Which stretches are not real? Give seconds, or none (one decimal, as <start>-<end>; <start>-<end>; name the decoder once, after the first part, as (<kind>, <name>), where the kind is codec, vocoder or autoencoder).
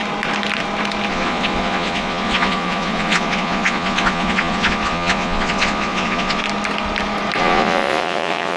1.1-6.4 (vocoder, Vocos); 7.4-8.6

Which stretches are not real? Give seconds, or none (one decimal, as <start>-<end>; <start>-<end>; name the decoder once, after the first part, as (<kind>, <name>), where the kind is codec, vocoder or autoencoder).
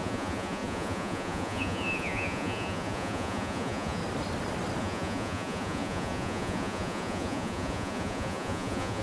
0.0-4.0 (vocoder, Vocos); 4.8-9.0